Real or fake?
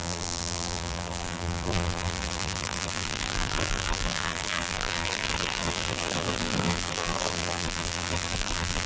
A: fake